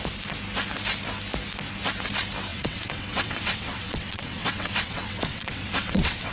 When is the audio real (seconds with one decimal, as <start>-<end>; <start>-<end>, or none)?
0.0-2.5